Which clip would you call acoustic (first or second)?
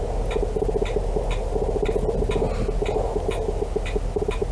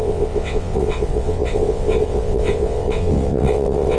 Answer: first